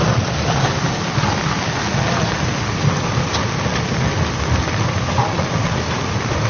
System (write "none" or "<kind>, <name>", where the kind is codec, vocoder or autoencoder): none